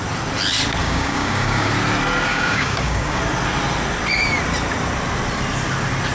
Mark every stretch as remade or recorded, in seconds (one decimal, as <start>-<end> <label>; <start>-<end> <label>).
0.0-0.8 recorded; 0.8-1.7 remade; 1.7-2.3 recorded; 2.3-3.2 remade; 3.2-6.1 recorded